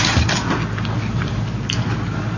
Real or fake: real